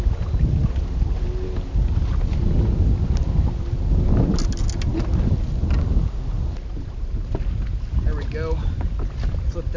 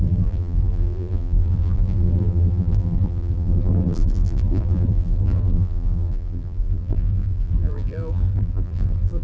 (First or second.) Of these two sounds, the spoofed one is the second